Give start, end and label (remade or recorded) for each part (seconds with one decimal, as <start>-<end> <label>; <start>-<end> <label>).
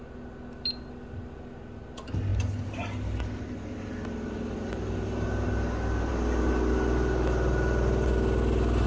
0.0-8.9 recorded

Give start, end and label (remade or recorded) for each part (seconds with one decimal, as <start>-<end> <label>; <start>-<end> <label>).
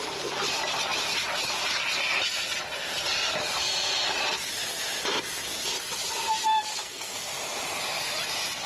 0.0-6.7 recorded; 6.7-7.3 remade; 7.3-8.7 recorded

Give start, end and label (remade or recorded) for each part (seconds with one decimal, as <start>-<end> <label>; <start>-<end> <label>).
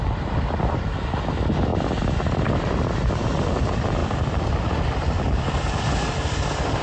0.0-6.8 recorded